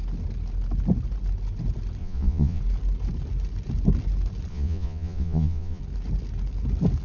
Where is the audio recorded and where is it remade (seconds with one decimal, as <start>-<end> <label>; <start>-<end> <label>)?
0.0-2.0 recorded; 2.0-2.6 remade; 2.6-4.5 recorded; 4.5-5.8 remade; 5.8-7.0 recorded

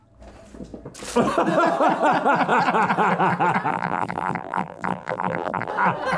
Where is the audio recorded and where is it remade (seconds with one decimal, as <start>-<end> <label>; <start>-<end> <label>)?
0.0-3.7 recorded; 3.7-5.7 remade; 5.7-6.2 recorded

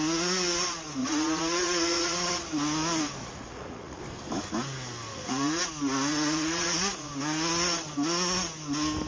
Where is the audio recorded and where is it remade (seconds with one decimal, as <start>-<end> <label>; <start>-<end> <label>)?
0.0-1.0 recorded; 1.0-2.3 remade; 2.3-3.2 recorded; 3.2-4.0 remade; 4.0-5.1 recorded; 5.1-5.6 remade; 5.6-6.1 recorded; 6.1-7.1 remade; 7.1-9.1 recorded

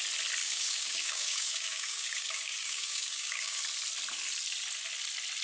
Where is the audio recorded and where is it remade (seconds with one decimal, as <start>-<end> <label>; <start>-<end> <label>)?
0.0-0.4 recorded; 0.4-3.6 remade; 3.6-5.4 recorded

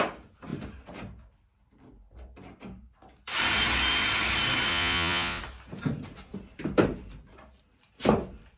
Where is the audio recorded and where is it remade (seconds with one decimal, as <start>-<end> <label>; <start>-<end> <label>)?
0.0-4.7 recorded; 4.7-5.4 remade; 5.4-8.6 recorded